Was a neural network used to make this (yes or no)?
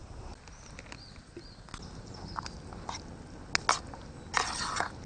no